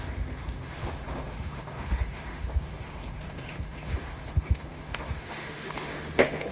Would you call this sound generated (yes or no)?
yes